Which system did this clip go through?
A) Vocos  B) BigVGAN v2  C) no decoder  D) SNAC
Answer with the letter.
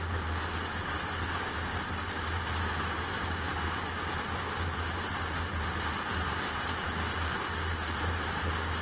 C